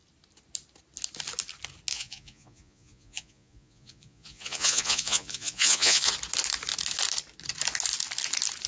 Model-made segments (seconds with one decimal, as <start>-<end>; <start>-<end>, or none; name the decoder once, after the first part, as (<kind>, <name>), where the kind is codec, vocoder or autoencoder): 1.9-6.1 (vocoder, Vocos)